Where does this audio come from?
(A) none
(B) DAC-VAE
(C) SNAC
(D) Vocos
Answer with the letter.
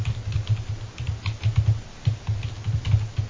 A